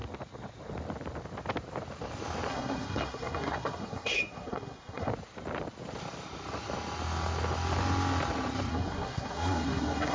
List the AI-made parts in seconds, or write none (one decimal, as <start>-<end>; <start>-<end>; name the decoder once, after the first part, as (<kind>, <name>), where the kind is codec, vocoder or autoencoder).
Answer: 2.5-5.1 (codec, SNAC); 8.7-10.1